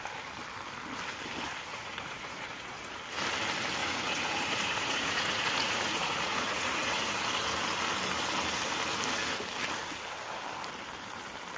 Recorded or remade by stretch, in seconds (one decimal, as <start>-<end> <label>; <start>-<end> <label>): 0.0-1.7 recorded; 1.7-3.0 remade; 3.0-3.8 recorded; 3.8-7.1 remade; 7.1-11.6 recorded